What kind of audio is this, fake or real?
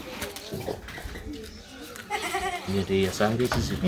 real